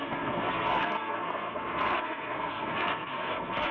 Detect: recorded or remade remade